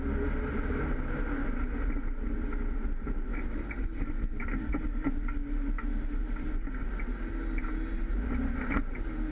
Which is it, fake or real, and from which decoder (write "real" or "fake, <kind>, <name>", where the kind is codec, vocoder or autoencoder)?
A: real